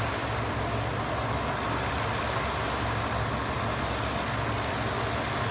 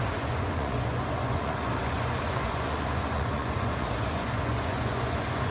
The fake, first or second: second